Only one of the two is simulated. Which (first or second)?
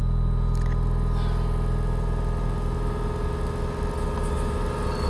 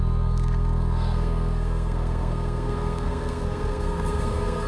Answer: second